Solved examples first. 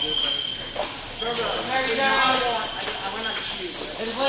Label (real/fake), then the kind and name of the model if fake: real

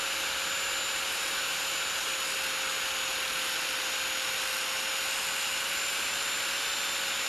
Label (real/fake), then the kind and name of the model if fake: real